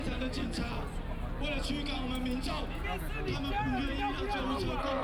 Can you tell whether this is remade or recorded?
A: recorded